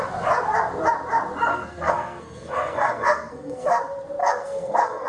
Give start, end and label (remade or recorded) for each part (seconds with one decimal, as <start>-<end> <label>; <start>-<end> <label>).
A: 0.0-1.5 recorded; 1.5-3.8 remade; 3.8-4.2 recorded; 4.2-5.1 remade